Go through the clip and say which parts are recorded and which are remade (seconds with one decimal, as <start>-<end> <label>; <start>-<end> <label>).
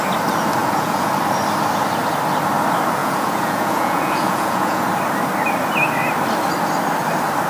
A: 0.0-0.6 recorded; 0.6-1.1 remade; 1.1-3.0 recorded; 3.0-4.9 remade; 4.9-7.5 recorded